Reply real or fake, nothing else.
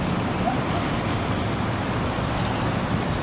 fake